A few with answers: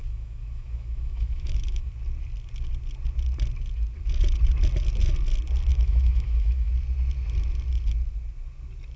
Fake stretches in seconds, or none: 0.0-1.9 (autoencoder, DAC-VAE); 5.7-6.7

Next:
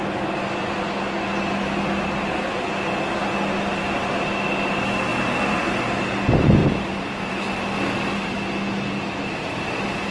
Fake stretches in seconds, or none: 5.1-5.6 (vocoder, BigVGAN v2); 6.6-7.4